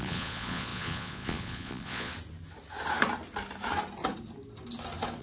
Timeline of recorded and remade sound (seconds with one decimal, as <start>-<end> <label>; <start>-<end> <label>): 0.0-2.1 remade; 2.1-5.2 recorded